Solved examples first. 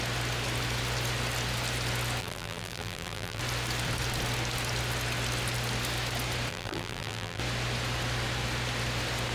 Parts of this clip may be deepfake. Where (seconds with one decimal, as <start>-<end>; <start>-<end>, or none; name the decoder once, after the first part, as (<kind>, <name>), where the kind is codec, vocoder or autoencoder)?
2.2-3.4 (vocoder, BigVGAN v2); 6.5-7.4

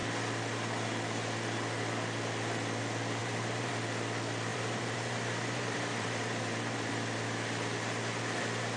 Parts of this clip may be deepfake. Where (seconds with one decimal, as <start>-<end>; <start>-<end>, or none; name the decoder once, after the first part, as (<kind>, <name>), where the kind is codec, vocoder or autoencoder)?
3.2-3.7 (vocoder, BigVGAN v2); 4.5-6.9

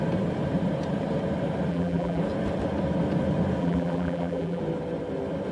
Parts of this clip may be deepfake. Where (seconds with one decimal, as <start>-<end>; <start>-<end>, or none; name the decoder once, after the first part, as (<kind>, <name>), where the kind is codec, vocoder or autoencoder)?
1.7-2.2 (vocoder, BigVGAN v2); 3.6-4.6

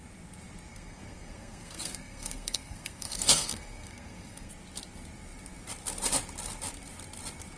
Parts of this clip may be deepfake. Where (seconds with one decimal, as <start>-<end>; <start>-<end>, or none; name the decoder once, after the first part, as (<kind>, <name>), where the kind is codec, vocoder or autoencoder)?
0.7-4.5 (codec, SNAC)